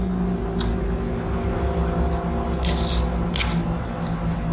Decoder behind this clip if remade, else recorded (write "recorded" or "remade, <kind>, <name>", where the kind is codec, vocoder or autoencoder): recorded